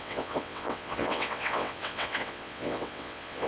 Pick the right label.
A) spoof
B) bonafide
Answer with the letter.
A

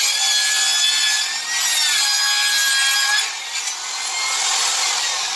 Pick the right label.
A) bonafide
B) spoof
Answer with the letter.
A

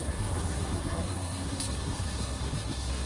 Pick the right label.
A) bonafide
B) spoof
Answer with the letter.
B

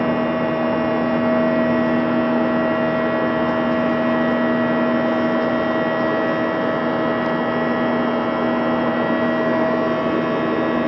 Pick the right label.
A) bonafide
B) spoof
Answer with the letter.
A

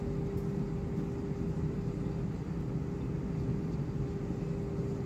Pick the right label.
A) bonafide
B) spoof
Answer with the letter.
A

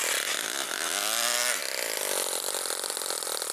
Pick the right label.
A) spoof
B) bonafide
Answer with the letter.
B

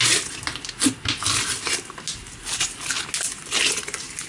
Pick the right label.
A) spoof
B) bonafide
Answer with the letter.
B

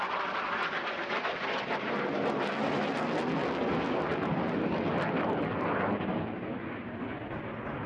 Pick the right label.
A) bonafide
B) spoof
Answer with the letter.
A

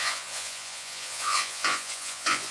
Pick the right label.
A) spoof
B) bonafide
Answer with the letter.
A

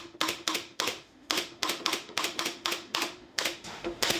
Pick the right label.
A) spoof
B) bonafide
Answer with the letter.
A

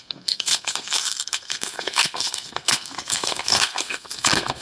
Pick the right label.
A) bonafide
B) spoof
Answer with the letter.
B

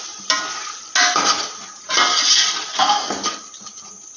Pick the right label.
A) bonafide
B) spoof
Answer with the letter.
A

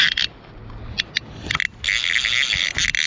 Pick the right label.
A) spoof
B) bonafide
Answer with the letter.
B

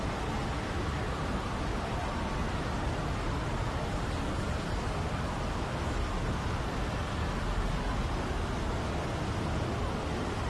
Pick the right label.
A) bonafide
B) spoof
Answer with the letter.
A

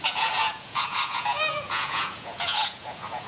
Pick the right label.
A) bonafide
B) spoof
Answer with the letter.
B